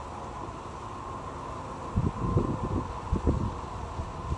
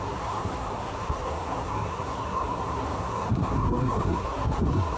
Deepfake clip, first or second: second